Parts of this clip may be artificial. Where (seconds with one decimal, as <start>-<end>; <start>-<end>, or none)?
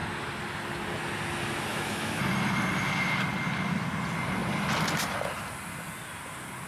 1.7-2.2